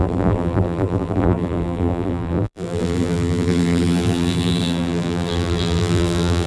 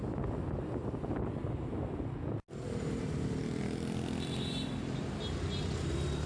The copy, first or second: first